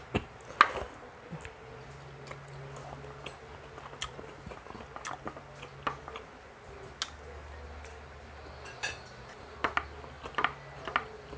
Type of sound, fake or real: real